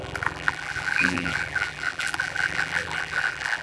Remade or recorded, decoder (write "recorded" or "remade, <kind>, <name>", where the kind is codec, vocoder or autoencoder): remade, vocoder, BigVGAN v2